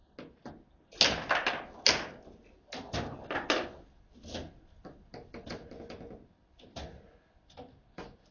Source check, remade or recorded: recorded